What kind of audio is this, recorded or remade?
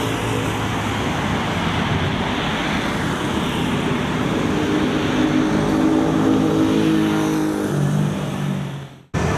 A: recorded